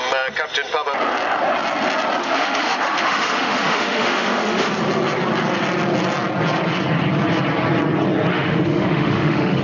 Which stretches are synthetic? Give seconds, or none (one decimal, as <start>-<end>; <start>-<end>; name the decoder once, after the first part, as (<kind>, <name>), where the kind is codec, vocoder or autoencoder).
2.2-4.7 (autoencoder, DAC-VAE); 8.3-9.6